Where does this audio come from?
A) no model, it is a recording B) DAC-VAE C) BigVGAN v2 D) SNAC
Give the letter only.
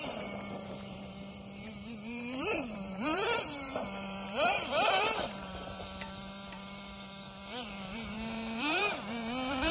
C